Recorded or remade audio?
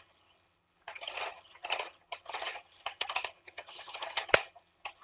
remade